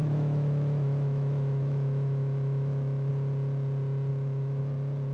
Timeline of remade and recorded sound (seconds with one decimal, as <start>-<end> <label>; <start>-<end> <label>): 0.0-3.1 remade; 3.1-4.1 recorded; 4.1-4.6 remade; 4.6-5.1 recorded